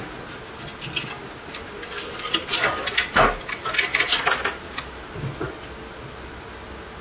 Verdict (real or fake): real